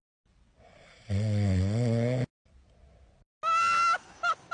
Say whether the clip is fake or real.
real